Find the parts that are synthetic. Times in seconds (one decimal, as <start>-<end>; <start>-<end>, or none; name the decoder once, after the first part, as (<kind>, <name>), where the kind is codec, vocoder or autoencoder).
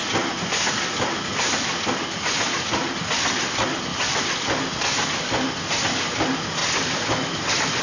3.9-4.8 (vocoder, BigVGAN v2)